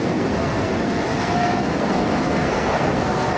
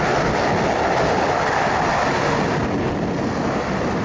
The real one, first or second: second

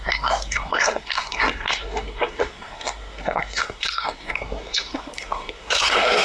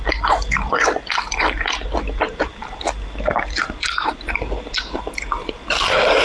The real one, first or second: second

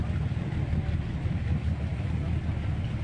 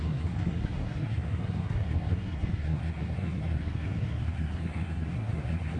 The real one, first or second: first